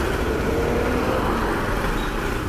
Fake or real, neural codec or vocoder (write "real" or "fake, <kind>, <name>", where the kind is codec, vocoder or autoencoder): real